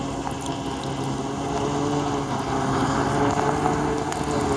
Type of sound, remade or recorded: recorded